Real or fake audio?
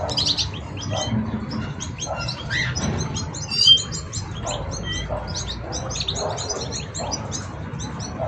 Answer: real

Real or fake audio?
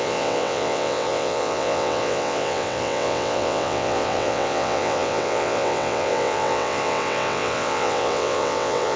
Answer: fake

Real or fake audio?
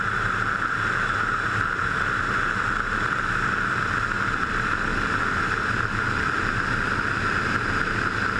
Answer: real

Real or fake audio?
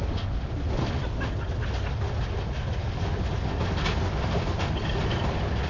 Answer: real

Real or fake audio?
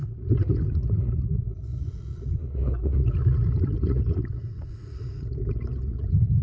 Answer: fake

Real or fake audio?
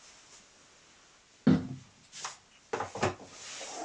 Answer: real